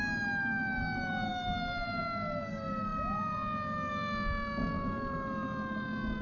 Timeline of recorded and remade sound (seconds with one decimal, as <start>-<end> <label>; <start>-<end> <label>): 0.0-6.2 recorded